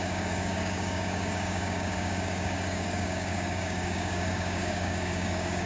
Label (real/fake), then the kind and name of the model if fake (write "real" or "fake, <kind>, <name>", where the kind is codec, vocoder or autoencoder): fake, codec, DAC